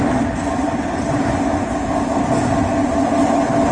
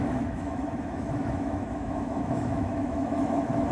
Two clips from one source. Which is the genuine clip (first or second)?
first